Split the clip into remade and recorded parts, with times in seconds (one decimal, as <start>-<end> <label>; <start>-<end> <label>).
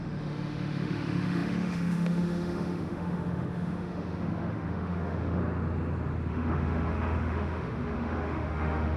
0.0-5.4 remade; 5.4-6.3 recorded; 6.3-9.0 remade